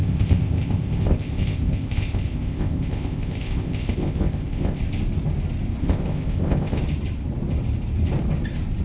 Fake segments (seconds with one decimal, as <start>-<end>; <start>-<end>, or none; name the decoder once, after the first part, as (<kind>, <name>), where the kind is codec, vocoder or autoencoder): 0.0-4.8 (codec, ZipCodec); 5.8-6.8